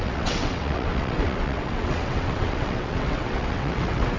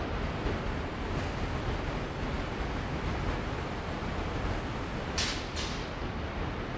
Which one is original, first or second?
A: second